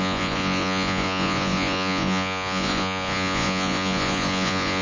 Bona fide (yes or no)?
no